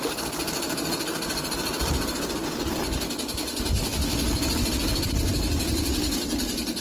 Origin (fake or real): fake